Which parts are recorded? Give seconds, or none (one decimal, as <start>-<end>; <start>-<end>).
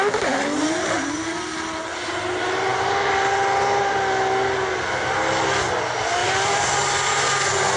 0.0-6.2; 6.7-7.8